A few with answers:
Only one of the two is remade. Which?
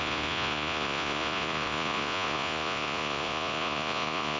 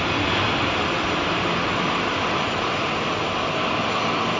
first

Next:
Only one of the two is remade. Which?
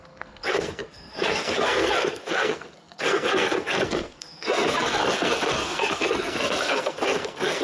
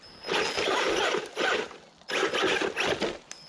first